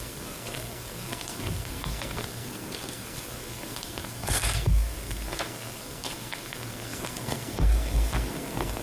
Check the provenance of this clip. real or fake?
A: fake